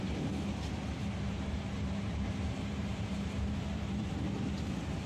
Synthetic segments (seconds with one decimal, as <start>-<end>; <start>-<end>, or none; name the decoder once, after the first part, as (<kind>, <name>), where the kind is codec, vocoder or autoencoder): 1.0-4.1 (vocoder, BigVGAN v2)

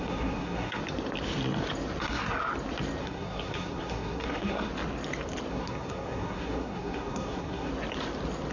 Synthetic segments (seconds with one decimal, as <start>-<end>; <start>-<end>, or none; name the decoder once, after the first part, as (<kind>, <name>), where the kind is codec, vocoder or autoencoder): 0.0-0.8 (codec, SNAC); 2.0-2.5; 3.0-4.7; 5.5-7.7